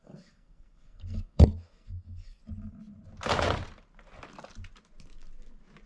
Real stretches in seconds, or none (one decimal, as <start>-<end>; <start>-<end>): 2.4-5.9